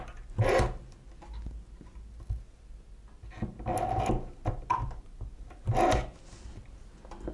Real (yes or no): yes